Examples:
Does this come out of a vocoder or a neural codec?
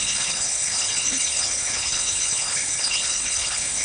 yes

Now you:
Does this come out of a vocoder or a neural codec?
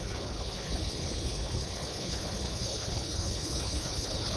yes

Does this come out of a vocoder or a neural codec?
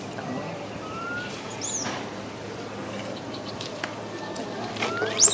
no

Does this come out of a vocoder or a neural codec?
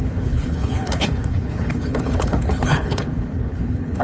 yes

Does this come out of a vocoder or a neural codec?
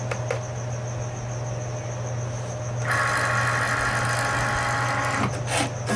no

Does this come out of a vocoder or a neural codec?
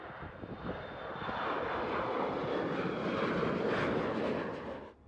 no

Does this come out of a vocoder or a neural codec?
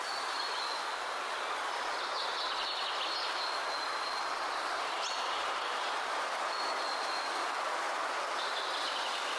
no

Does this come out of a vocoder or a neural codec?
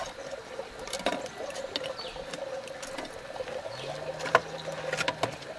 no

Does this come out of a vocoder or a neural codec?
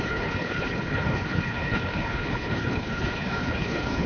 yes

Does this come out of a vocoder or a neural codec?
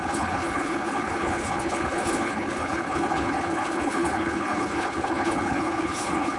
yes